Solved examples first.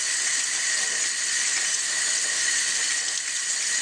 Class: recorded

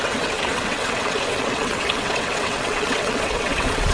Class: remade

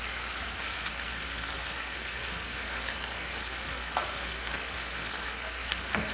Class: remade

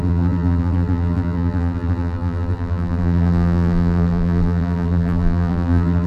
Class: remade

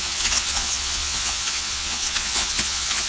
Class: remade